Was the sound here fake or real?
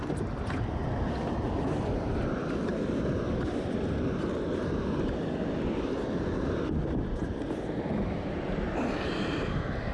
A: real